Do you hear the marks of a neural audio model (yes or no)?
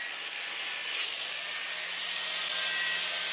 no